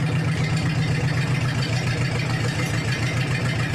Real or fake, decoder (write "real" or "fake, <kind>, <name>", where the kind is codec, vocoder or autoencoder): fake, vocoder, BigVGAN v2